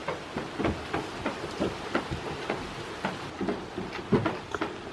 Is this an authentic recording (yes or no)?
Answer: yes